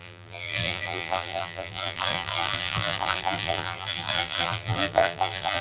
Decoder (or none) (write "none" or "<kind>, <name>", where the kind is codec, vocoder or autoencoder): vocoder, BigVGAN v2